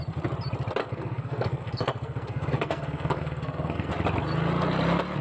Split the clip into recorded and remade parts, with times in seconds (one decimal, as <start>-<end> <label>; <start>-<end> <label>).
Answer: 0.0-0.8 recorded; 0.8-3.9 remade; 3.9-5.2 recorded